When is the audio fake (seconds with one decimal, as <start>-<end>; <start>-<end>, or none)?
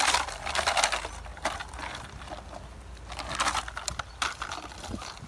none